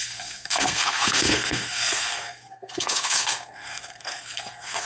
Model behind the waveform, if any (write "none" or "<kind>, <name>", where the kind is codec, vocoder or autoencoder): codec, SNAC